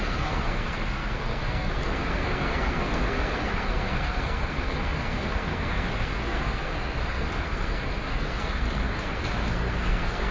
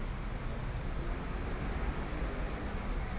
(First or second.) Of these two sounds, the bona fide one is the second